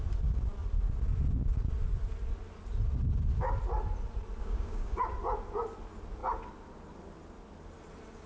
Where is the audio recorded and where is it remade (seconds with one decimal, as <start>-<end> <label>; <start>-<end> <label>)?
0.0-4.4 recorded; 4.4-5.0 remade; 5.0-8.3 recorded